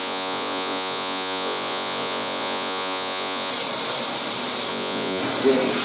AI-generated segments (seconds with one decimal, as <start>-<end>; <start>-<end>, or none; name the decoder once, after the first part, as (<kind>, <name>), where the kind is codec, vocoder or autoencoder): 0.0-3.5 (vocoder, Vocos); 4.7-5.2